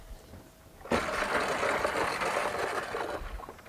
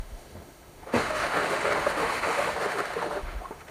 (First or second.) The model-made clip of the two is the second